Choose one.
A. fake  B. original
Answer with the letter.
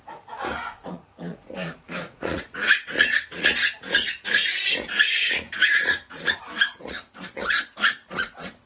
A